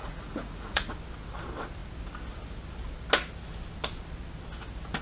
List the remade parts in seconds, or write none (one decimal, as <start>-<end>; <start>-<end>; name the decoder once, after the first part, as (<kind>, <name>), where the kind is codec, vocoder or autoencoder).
0.0-0.9 (vocoder, Vocos)